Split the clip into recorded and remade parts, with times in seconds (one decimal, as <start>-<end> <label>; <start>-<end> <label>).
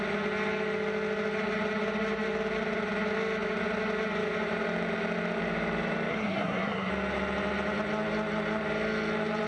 0.0-6.1 recorded; 6.1-6.9 remade; 6.9-9.5 recorded